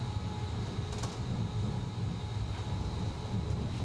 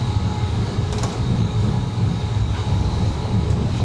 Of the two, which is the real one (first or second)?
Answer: first